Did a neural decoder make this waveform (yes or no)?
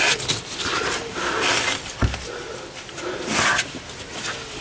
no